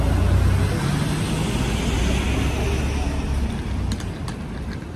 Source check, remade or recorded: recorded